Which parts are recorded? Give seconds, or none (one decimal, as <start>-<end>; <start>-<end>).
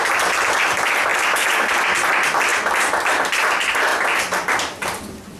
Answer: 0.0-1.1; 1.9-3.9; 5.0-5.4